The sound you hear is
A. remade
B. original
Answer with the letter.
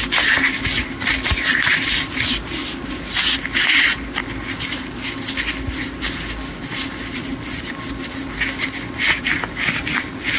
B